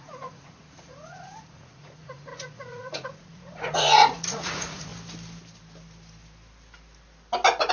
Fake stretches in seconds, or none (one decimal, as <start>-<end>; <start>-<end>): 0.0-4.9